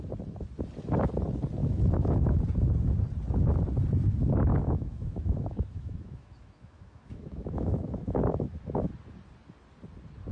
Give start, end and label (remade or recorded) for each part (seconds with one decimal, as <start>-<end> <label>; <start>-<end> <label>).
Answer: 0.0-1.6 recorded; 1.6-2.4 remade; 2.4-4.5 recorded; 4.5-8.9 remade; 8.9-10.3 recorded